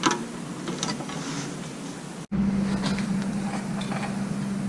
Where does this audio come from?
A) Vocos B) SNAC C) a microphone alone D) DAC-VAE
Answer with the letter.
C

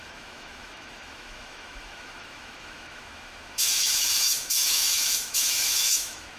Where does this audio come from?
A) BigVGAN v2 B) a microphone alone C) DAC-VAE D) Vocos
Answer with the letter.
C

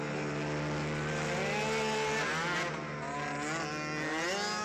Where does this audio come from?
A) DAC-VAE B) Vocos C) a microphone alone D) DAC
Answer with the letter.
C